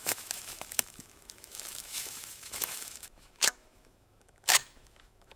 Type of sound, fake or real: fake